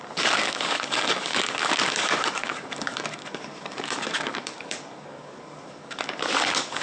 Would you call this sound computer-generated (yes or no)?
yes